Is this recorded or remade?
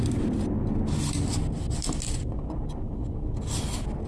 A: recorded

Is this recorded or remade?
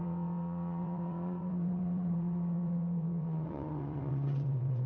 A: remade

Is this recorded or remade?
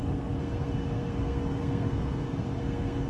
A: remade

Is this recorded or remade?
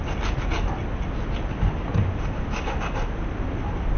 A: recorded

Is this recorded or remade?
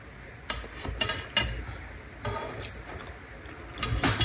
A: recorded